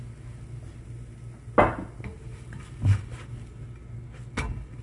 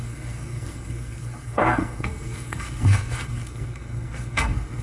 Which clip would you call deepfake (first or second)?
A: second